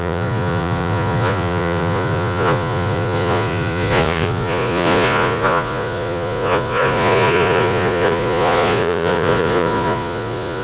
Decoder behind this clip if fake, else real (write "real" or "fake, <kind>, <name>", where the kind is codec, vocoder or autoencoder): fake, vocoder, Vocos